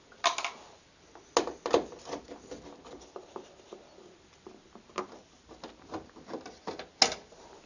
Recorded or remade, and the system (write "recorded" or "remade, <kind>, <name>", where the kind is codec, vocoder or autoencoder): recorded